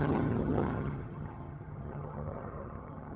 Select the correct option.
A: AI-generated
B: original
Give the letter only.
A